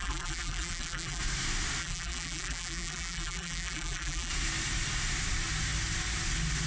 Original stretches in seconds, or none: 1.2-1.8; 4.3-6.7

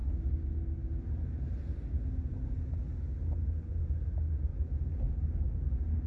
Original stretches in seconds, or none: 0.0-6.1

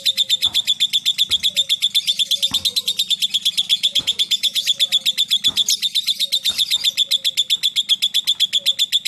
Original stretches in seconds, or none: 0.0-3.7; 4.6-9.1

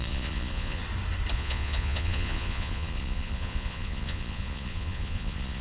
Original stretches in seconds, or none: 0.8-1.3

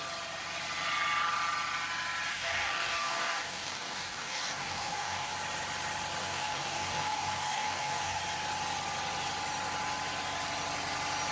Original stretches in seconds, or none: 0.0-2.3; 5.3-6.2; 8.2-11.3

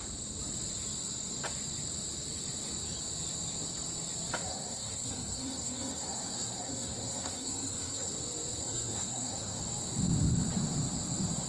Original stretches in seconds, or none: 0.0-4.5; 8.1-8.6; 9.6-11.5

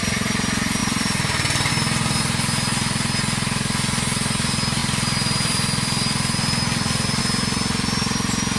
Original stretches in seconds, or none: 0.0-0.8; 1.7-4.8; 7.2-8.6

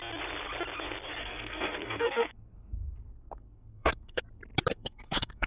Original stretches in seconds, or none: 0.0-1.2; 4.2-4.7